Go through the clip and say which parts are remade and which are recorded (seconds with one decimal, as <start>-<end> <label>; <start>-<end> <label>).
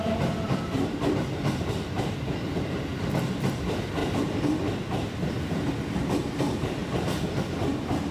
0.0-4.0 remade; 4.0-4.7 recorded; 4.7-6.8 remade; 6.8-8.1 recorded